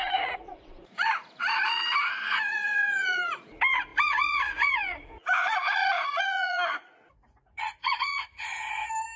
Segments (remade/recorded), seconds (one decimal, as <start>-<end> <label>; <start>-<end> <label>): 0.0-8.5 remade; 8.5-9.2 recorded